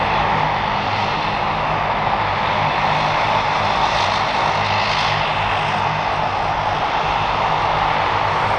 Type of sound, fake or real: real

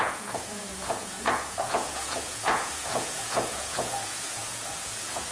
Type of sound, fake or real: fake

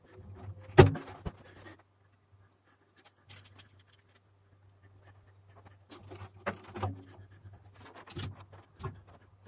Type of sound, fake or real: real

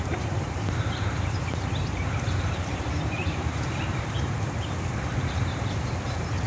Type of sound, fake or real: fake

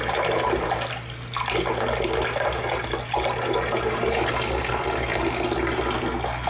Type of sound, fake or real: real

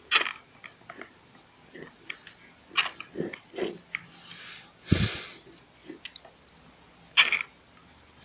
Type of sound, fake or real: real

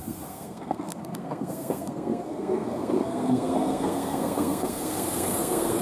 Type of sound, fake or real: fake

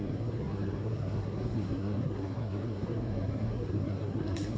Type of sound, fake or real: fake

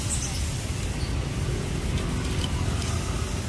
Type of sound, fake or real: real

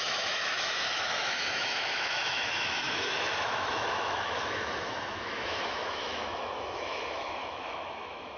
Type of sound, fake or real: fake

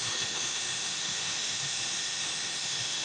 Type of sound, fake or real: fake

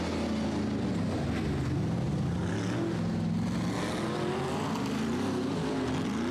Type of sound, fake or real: real